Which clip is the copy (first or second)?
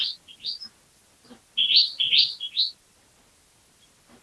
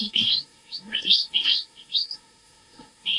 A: second